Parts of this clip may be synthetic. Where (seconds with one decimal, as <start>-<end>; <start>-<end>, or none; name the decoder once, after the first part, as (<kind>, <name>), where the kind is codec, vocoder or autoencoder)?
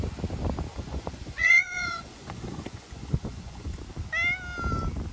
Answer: 0.7-3.8 (vocoder, Vocos)